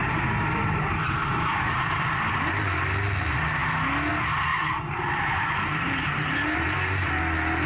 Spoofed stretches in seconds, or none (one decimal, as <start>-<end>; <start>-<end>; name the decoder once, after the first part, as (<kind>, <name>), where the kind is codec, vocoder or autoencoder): 0.0-2.1 (vocoder, BigVGAN v2); 4.5-7.2